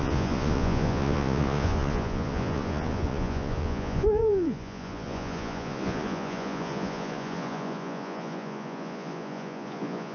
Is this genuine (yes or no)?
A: no